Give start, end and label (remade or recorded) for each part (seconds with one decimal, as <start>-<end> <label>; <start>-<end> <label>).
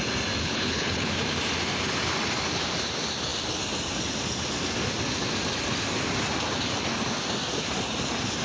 0.0-0.4 recorded; 0.4-1.1 remade; 1.1-8.4 recorded